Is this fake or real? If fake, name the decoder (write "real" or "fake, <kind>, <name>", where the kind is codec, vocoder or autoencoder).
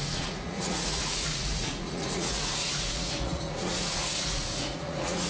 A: fake, vocoder, Vocos